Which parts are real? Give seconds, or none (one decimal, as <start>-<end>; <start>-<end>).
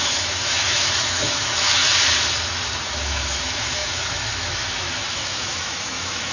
1.8-2.9